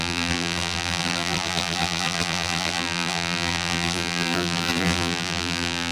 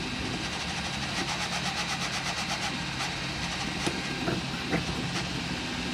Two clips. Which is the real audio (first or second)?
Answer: second